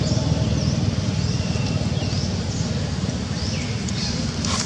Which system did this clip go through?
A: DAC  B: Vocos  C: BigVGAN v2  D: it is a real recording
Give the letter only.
D